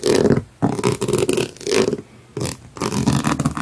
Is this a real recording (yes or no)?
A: yes